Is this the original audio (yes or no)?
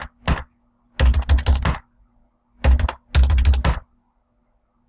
yes